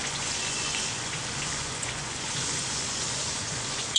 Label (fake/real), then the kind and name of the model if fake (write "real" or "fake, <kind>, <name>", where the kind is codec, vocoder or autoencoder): fake, vocoder, Vocos